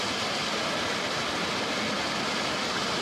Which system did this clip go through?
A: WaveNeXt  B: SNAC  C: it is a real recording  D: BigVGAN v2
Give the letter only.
C